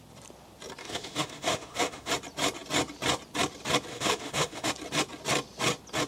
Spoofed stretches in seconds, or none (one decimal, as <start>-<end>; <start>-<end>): 0.8-2.1; 3.9-4.7